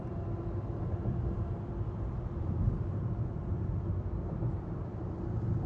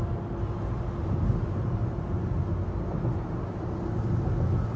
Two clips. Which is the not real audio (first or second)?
first